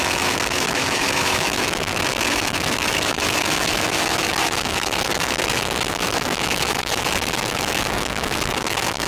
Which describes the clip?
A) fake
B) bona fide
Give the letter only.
A